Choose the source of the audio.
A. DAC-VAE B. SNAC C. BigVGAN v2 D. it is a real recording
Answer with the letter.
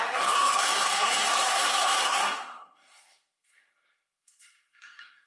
B